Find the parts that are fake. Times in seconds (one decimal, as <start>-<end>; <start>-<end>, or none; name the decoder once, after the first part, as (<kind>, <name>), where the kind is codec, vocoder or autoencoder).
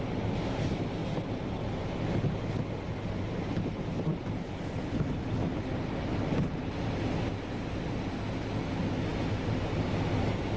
9.1-9.9 (vocoder, BigVGAN v2)